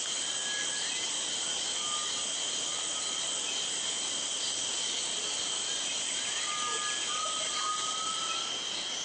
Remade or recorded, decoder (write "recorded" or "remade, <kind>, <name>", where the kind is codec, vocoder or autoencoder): recorded